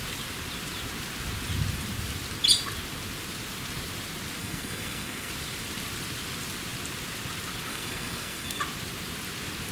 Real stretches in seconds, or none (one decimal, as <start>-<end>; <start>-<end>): 0.0-4.4; 5.3-7.7; 8.6-9.7